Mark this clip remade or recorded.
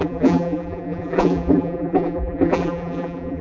remade